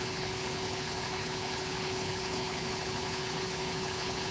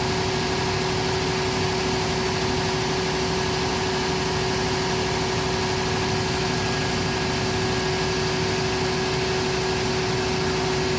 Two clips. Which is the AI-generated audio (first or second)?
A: first